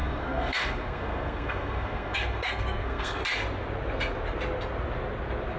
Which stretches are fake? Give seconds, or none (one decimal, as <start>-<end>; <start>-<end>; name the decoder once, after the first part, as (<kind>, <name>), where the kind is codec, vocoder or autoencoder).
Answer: 0.0-3.2 (codec, SNAC)